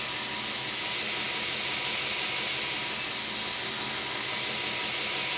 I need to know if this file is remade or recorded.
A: recorded